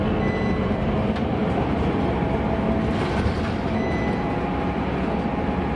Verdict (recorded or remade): recorded